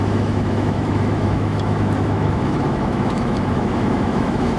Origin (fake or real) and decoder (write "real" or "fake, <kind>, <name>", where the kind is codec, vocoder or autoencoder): fake, autoencoder, DAC-VAE